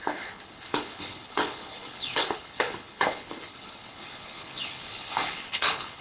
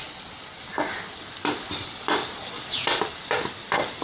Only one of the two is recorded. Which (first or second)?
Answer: second